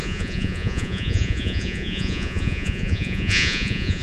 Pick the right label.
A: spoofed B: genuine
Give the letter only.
A